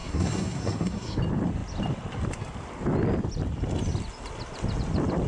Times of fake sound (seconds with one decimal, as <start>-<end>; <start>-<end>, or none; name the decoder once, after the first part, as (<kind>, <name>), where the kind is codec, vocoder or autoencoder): 0.0-1.2 (codec, SNAC)